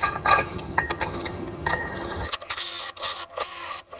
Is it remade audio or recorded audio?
remade